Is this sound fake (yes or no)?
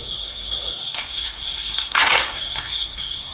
yes